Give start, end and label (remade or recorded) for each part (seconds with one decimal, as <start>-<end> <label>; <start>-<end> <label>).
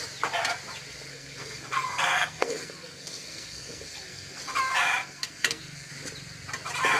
0.0-1.1 recorded; 1.1-4.4 remade; 4.4-5.0 recorded; 5.0-5.9 remade; 5.9-7.0 recorded